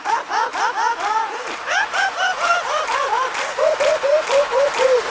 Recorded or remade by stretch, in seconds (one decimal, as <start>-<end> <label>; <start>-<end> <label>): 0.0-5.1 recorded

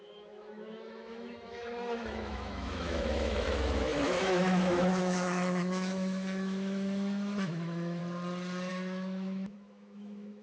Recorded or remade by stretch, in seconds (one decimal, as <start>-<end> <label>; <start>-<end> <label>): 0.0-8.0 remade; 8.0-8.7 recorded; 8.7-10.4 remade

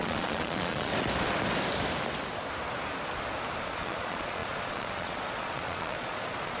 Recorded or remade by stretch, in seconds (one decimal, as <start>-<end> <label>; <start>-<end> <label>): 0.0-0.9 remade; 0.9-3.6 recorded; 3.6-6.6 remade

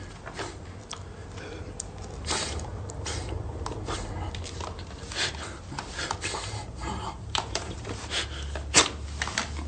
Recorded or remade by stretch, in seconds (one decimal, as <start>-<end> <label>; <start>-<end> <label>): 0.0-6.8 recorded; 6.8-8.3 remade; 8.3-9.7 recorded

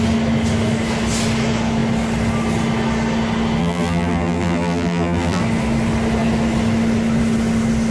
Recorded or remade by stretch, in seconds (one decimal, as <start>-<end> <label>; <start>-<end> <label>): 0.0-3.6 recorded; 3.6-5.4 remade; 5.4-7.9 recorded